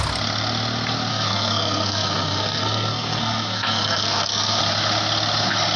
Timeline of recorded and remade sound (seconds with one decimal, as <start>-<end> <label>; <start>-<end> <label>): 0.0-1.1 recorded; 1.1-4.6 remade; 4.6-5.8 recorded